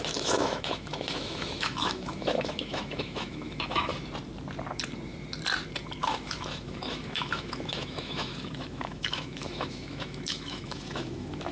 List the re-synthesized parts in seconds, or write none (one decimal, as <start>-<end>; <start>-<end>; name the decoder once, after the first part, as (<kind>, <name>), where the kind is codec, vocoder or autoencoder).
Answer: 0.0-3.9 (autoencoder, DAC-VAE); 6.0-11.5